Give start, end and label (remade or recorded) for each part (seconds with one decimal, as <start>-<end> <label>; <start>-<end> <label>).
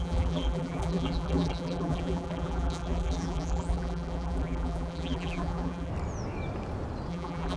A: 0.0-5.9 remade; 5.9-7.1 recorded; 7.1-7.6 remade